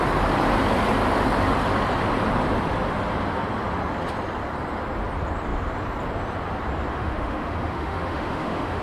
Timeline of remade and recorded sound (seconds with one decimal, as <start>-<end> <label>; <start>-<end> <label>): 0.0-6.9 recorded; 6.9-8.8 remade

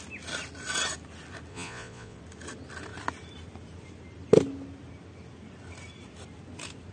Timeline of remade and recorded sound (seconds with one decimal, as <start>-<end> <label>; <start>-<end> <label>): 0.0-1.5 recorded; 1.5-2.2 remade; 2.2-6.9 recorded

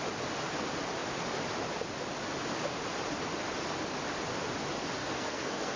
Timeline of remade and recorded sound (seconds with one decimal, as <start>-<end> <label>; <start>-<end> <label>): 0.0-5.0 recorded; 5.0-5.8 remade

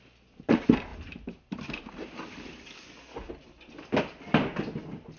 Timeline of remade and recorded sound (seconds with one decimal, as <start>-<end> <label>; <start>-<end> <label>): 0.0-5.2 recorded

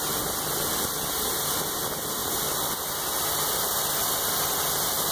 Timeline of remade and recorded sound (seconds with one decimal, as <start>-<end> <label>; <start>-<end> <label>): 0.0-5.1 recorded

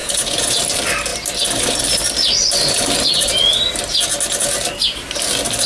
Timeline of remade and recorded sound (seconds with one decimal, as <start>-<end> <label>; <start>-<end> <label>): 0.0-0.6 remade; 0.6-5.7 recorded

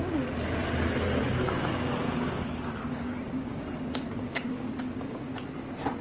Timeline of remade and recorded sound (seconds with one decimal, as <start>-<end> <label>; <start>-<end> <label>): 0.0-1.7 recorded; 1.7-5.2 remade; 5.2-6.0 recorded

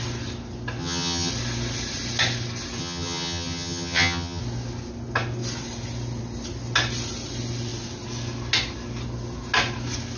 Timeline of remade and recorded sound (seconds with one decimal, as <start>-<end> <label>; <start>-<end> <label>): 0.0-0.8 recorded; 0.8-1.3 remade; 1.3-2.8 recorded; 2.8-4.4 remade; 4.4-10.2 recorded